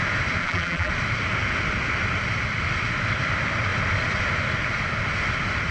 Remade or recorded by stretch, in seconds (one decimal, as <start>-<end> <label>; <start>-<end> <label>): 0.0-0.4 recorded; 0.4-0.9 remade; 0.9-5.7 recorded